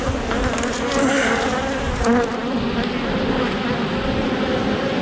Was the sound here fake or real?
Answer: real